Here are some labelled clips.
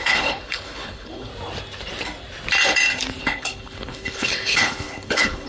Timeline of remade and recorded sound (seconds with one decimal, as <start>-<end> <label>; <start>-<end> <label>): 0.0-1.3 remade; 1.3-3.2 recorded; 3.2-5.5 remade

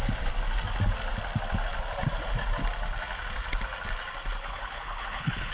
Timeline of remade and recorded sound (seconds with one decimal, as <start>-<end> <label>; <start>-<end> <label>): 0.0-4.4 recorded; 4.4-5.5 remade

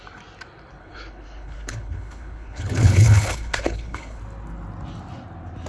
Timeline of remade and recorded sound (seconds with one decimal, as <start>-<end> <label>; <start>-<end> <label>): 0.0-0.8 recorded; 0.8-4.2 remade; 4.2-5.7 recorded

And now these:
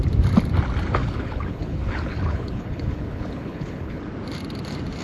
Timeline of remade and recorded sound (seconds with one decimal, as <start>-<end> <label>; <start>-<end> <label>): 0.0-1.0 recorded; 1.0-4.0 remade; 4.0-5.0 recorded